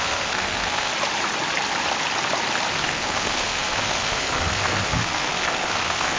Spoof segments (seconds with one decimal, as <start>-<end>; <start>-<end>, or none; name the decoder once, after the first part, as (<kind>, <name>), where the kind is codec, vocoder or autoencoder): 0.0-0.9 (codec, SNAC); 2.7-6.2